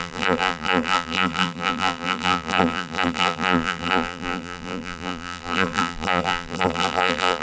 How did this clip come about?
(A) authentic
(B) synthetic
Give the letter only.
B